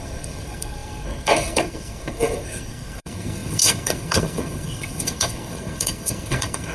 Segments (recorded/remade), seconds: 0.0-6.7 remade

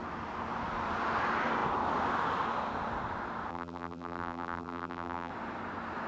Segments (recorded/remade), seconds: 0.0-3.5 recorded; 3.5-5.3 remade; 5.3-6.1 recorded

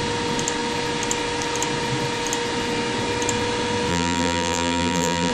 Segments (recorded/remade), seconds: 0.0-3.9 recorded; 3.9-5.3 remade

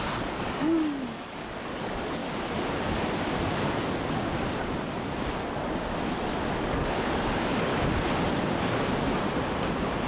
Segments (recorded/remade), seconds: 0.0-2.2 remade; 2.2-6.6 recorded; 6.6-7.7 remade; 7.7-10.1 recorded